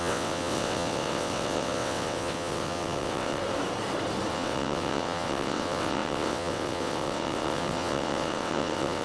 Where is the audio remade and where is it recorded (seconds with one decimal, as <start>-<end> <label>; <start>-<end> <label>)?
0.0-3.4 remade; 3.4-4.3 recorded; 4.3-9.0 remade